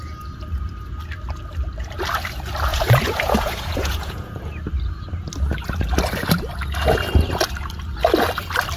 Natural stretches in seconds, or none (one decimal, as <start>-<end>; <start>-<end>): 0.0-2.7; 4.4-8.8